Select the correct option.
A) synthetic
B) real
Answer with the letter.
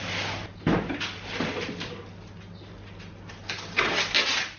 B